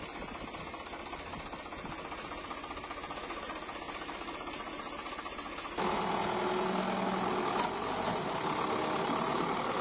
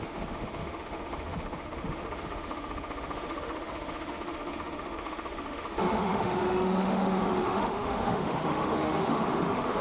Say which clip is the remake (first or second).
second